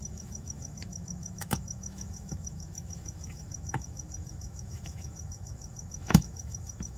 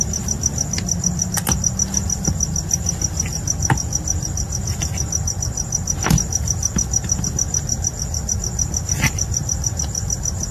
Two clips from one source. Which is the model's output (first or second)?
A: first